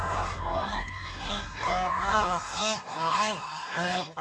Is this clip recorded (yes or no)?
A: no